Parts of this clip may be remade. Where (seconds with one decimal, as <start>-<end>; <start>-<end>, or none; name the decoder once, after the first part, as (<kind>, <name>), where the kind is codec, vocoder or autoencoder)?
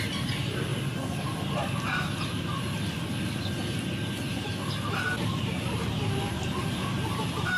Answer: none